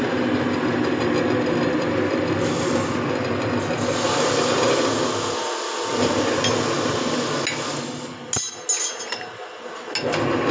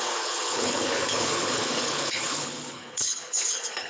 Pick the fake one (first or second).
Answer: second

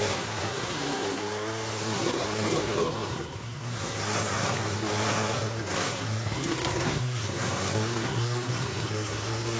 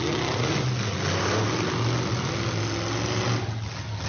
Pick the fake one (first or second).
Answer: first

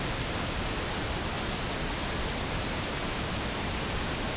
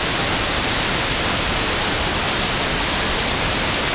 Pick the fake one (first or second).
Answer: second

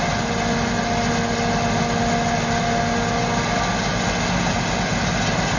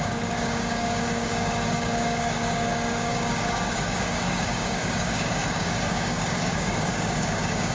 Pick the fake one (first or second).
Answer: second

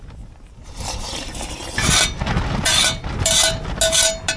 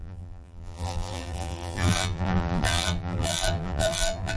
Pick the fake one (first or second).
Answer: second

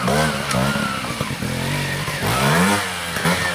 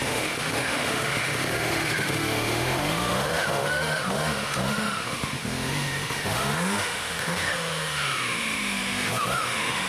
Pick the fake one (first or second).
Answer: second